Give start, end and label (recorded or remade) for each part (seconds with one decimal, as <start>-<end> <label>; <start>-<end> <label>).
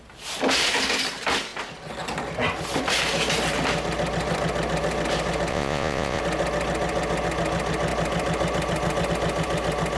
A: 0.0-5.5 recorded; 5.5-6.2 remade; 6.2-10.0 recorded